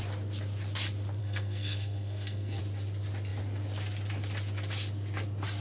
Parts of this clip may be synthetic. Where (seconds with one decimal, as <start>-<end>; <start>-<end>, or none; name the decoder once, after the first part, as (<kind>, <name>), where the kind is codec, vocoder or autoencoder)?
1.2-2.6 (codec, SNAC)